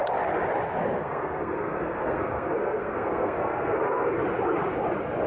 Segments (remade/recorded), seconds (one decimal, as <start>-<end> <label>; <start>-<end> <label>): 0.0-1.0 recorded; 1.0-4.2 remade; 4.2-5.3 recorded